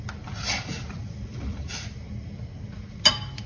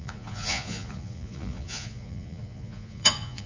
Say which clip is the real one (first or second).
first